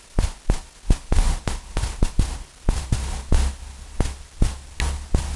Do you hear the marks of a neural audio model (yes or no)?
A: no